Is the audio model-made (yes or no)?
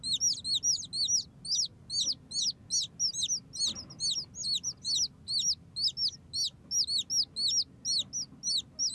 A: no